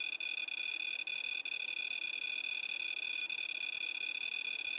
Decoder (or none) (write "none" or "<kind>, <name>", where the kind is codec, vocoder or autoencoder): none